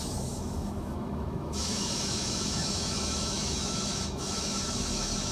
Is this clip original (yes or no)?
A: no